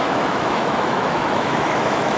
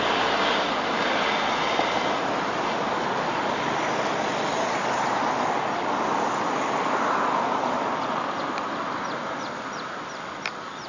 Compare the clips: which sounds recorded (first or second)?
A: second